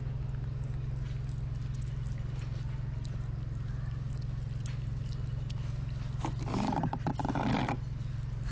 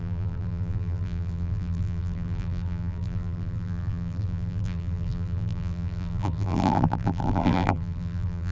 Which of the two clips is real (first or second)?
first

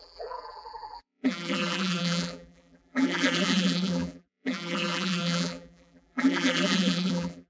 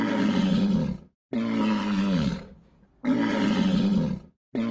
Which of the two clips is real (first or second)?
second